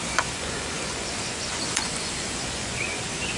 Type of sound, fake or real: fake